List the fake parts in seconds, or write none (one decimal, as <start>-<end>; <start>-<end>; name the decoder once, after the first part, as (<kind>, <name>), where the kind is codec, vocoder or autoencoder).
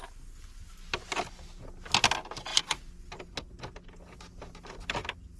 none